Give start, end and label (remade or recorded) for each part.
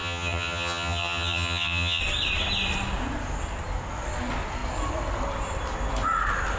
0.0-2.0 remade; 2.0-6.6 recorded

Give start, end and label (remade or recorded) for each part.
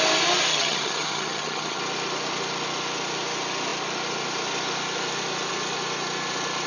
0.0-0.5 recorded; 0.5-1.8 remade; 1.8-6.7 recorded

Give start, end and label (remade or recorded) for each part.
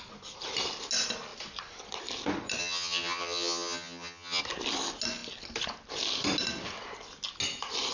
0.0-2.6 recorded; 2.6-4.4 remade; 4.4-7.9 recorded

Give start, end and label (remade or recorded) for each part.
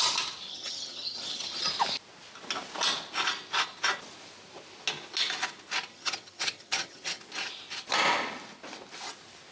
0.0-0.5 recorded; 0.5-1.7 remade; 1.7-5.9 recorded; 5.9-7.2 remade; 7.2-9.5 recorded